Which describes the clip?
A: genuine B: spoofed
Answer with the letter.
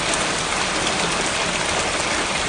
A